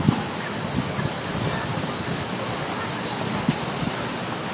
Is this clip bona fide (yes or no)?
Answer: yes